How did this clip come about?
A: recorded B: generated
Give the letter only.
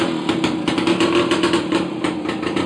A